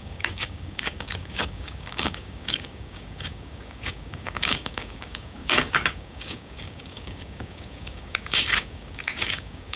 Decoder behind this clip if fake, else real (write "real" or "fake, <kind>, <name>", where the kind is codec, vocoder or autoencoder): fake, codec, DAC